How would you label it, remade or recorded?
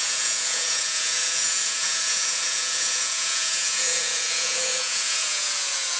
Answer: remade